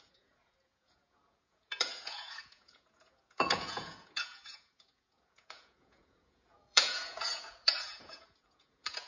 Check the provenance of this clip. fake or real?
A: fake